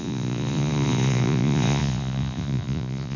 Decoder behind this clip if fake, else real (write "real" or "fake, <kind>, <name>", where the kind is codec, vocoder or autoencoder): fake, vocoder, Vocos